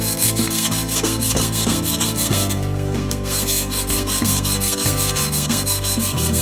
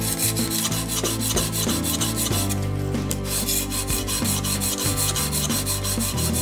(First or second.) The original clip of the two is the second